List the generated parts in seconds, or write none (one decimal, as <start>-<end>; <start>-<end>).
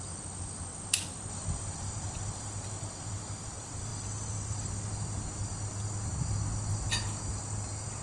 none